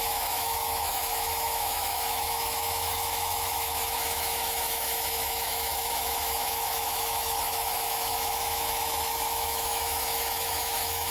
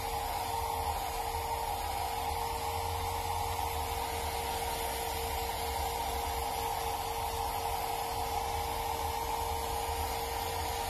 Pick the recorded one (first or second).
second